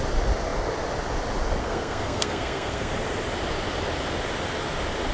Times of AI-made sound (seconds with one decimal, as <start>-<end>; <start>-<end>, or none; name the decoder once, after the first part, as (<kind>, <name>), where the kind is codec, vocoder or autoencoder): 1.6-2.9 (codec, SNAC)